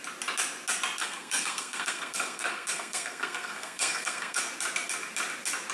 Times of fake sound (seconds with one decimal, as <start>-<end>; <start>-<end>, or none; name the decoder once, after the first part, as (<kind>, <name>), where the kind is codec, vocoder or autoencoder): 1.0-4.4 (codec, SNAC)